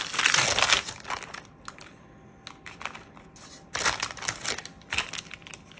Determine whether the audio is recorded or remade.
recorded